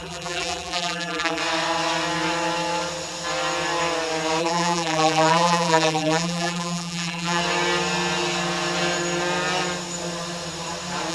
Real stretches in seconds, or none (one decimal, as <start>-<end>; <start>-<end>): 1.4-4.4; 7.4-11.1